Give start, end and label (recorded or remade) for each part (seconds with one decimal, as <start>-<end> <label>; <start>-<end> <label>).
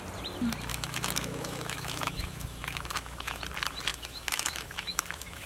0.0-0.7 recorded; 0.7-3.4 remade; 3.4-3.9 recorded; 3.9-5.5 remade